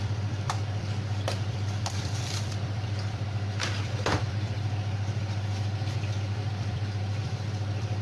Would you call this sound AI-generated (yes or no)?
yes